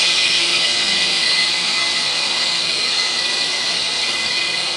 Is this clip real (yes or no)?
no